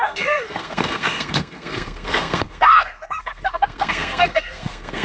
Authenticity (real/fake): fake